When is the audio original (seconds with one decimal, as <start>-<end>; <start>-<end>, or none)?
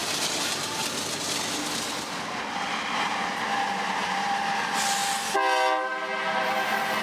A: 0.8-2.7; 4.3-7.0